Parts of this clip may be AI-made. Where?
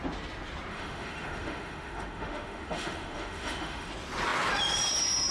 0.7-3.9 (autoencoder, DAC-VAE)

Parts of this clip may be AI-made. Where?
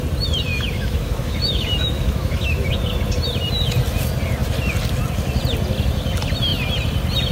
0.5-2.7 (autoencoder, DAC-VAE)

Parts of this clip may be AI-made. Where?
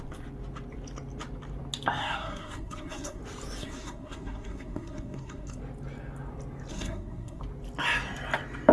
2.0-3.2 (codec, SNAC); 3.6-5.6; 6.7-7.4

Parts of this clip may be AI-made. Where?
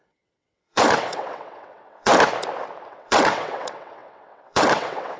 0.0-2.1 (vocoder, WaveNeXt); 2.9-5.2